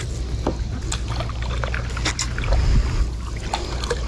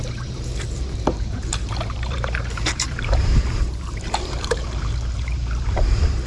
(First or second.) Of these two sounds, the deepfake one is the second